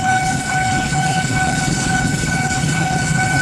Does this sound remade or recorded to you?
remade